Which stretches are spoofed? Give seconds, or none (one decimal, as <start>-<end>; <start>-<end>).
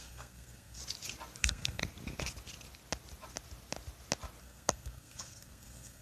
0.0-0.8; 1.4-1.8; 4.4-6.0